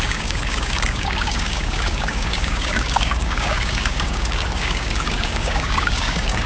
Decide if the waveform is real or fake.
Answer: fake